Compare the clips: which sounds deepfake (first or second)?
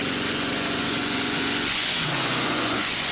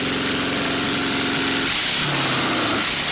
first